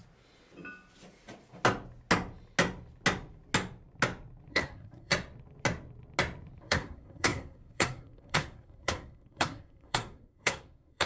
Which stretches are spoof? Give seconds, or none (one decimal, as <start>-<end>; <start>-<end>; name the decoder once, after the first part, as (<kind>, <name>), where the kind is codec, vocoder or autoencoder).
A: 4.5-5.1 (codec, SNAC); 6.6-11.1